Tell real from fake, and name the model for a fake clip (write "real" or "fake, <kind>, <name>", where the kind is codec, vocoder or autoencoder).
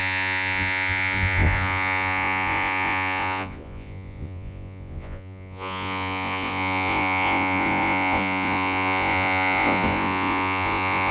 fake, vocoder, Vocos